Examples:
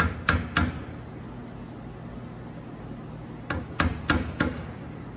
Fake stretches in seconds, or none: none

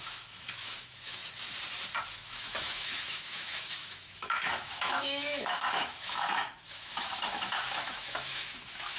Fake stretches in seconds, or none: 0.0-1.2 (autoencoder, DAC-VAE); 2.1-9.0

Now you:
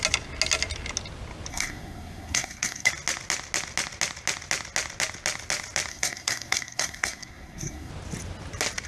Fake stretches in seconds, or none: 1.5-2.9 (codec, SNAC); 5.9-7.9

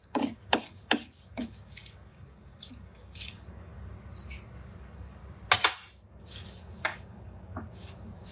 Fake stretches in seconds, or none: 0.0-3.7 (codec, DAC); 4.8-5.2; 6.1-8.3